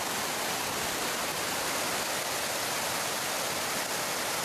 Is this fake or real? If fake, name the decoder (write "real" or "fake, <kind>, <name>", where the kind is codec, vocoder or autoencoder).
real